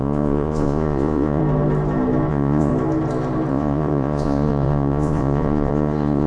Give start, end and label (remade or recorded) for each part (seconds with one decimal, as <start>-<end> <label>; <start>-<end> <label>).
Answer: 0.0-1.4 remade; 1.4-2.3 recorded; 2.3-2.7 remade; 2.7-3.5 recorded; 3.5-6.3 remade